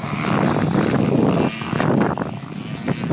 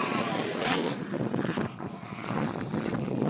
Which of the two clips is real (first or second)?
first